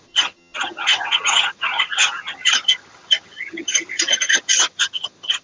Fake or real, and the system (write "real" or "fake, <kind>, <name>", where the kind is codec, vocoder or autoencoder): fake, vocoder, HiFi-GAN